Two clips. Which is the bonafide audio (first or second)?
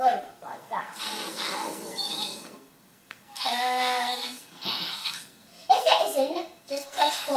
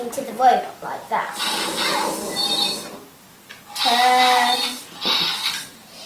second